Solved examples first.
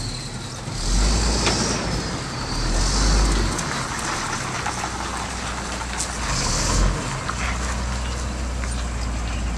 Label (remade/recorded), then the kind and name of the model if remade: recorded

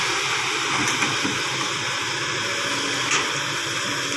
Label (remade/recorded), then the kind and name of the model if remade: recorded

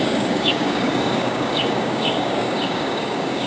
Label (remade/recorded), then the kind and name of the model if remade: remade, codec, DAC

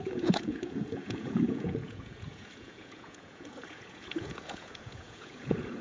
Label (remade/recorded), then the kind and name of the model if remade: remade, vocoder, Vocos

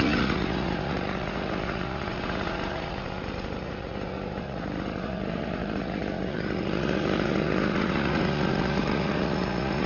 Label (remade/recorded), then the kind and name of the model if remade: remade, vocoder, Vocos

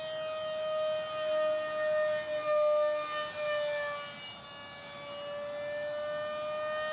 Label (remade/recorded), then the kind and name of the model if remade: recorded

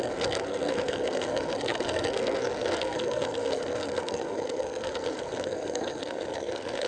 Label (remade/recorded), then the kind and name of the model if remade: remade, codec, SNAC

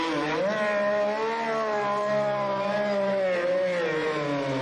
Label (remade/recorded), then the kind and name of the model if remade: recorded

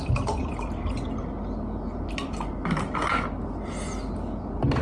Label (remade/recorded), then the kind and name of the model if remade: recorded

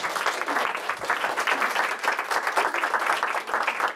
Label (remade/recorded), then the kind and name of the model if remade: recorded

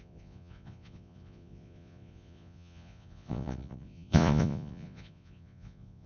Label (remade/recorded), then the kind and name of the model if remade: remade, vocoder, Vocos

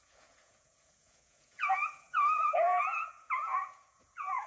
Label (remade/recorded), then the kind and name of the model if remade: remade, vocoder, Vocos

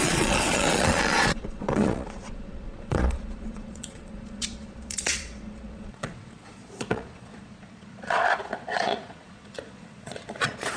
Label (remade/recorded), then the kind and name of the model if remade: remade, vocoder, Vocos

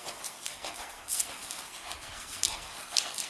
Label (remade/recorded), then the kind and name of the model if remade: remade, codec, SNAC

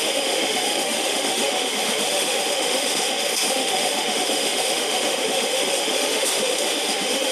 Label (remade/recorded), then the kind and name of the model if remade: remade, autoencoder, DAC-VAE